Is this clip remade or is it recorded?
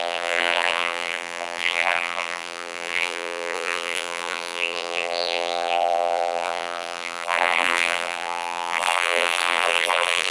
remade